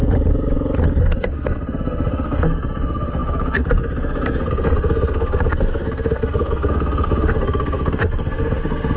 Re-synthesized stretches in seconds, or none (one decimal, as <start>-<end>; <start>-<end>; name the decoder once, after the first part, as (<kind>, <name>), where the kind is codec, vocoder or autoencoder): 1.0-9.0 (codec, SNAC)